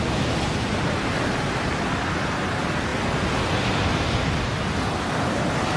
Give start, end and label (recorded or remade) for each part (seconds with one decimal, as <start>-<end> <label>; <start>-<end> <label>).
0.0-5.8 recorded